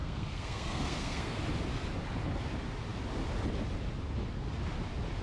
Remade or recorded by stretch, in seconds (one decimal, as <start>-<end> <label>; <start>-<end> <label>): 0.0-1.4 remade; 1.4-5.2 recorded